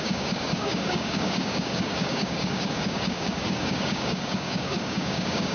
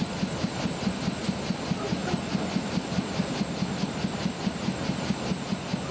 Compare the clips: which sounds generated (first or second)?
first